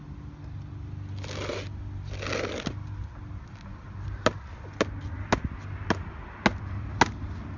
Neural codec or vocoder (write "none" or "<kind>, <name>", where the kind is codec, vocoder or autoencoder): none